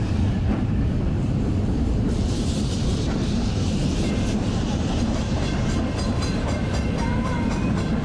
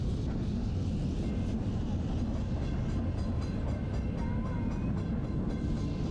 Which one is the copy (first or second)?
first